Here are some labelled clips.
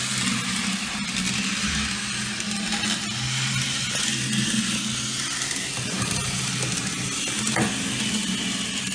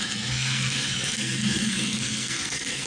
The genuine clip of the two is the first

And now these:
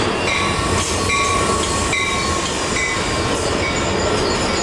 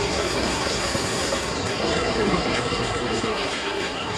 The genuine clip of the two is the first